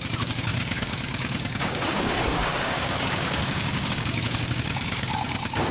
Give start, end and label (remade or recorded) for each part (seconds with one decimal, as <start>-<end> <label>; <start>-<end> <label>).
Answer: 0.0-5.7 remade